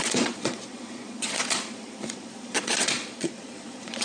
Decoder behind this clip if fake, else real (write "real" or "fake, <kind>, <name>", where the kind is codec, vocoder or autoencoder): fake, vocoder, Vocos